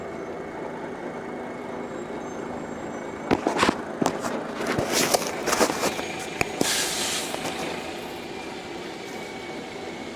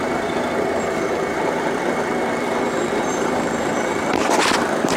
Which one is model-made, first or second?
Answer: second